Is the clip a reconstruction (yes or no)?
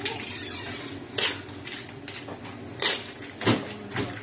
no